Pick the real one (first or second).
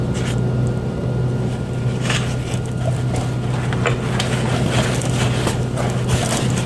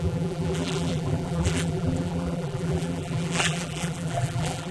first